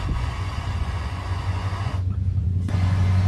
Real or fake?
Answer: fake